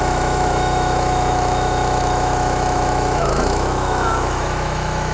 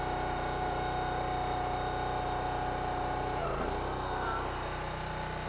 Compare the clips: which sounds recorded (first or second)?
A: second